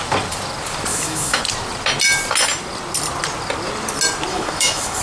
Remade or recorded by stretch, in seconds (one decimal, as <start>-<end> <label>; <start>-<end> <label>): 0.0-0.9 recorded; 0.9-1.4 remade; 1.4-4.3 recorded; 4.3-5.0 remade